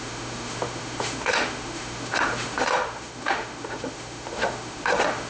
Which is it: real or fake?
fake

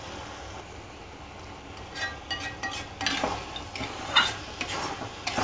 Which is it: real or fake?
real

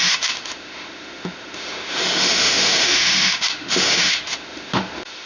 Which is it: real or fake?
fake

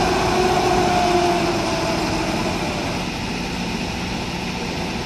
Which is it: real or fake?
real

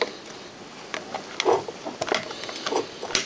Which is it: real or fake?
real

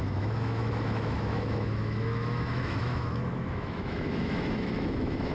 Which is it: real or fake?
fake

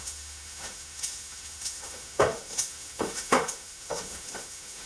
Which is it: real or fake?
fake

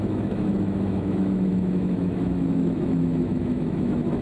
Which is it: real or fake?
fake